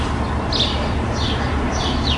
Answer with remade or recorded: recorded